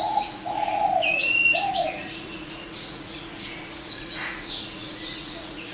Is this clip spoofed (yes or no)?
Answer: yes